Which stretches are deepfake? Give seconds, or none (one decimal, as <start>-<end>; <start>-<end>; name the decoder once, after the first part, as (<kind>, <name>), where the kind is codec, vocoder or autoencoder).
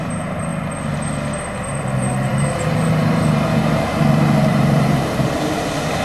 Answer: 0.0-0.5 (vocoder, BigVGAN v2); 1.5-6.0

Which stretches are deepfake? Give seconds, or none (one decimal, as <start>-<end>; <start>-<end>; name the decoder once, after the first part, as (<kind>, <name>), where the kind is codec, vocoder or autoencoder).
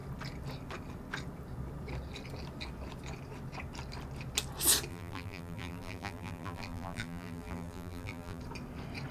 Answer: 4.9-8.4 (vocoder, BigVGAN v2)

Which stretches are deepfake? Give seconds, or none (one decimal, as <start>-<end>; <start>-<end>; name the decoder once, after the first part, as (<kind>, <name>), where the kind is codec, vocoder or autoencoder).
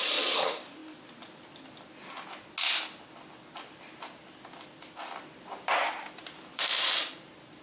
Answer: 0.0-0.8 (vocoder, BigVGAN v2); 5.4-7.6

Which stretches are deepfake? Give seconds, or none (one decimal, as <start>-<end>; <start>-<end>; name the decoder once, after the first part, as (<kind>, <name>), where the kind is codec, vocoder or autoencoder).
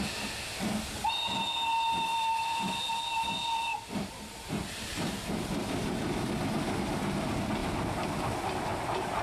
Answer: 2.1-2.7 (vocoder, BigVGAN v2); 3.7-6.4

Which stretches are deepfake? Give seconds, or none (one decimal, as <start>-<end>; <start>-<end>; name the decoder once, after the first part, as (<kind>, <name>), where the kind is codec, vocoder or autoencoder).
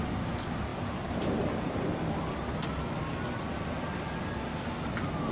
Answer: none